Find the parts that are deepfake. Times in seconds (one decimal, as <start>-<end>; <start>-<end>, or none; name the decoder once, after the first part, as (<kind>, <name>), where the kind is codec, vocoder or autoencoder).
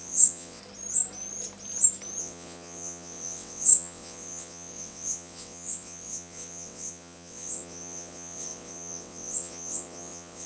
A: 0.0-0.6 (vocoder, WaveNeXt); 2.2-10.5